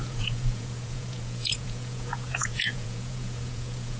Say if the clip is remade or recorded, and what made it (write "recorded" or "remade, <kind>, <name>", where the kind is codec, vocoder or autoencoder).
remade, vocoder, Vocos